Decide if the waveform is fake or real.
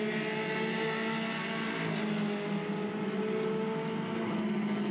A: real